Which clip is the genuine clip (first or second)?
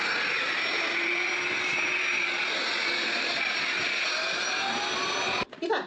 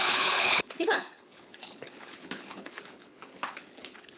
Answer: first